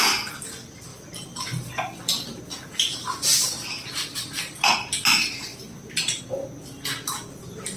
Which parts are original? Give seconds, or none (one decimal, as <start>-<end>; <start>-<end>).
0.0-0.9; 2.4-3.3; 4.6-5.5; 6.2-7.8